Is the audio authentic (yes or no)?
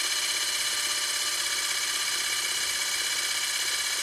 yes